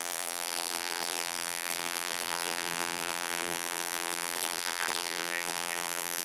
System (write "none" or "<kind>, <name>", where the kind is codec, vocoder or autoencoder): vocoder, BigVGAN v2